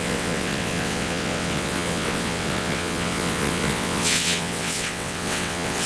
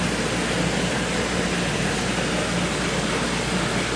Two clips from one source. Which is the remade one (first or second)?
first